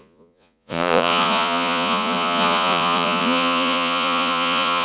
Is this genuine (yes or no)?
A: no